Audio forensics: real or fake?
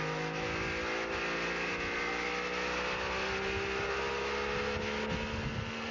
real